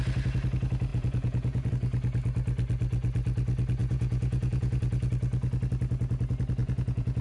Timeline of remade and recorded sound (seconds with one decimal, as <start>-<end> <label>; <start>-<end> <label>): 0.0-0.9 recorded; 0.9-1.7 remade; 1.7-3.8 recorded; 3.8-5.1 remade; 5.1-6.6 recorded; 6.6-7.2 remade